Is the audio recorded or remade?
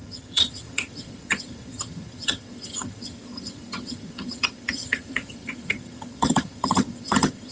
remade